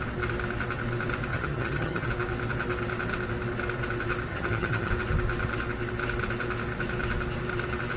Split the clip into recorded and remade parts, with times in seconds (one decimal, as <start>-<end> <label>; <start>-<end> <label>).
0.0-1.3 recorded; 1.3-2.1 remade; 2.1-4.3 recorded; 4.3-4.9 remade; 4.9-8.0 recorded